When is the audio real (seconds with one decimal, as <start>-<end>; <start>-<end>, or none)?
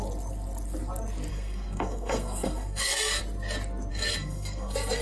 0.0-1.3; 3.2-3.9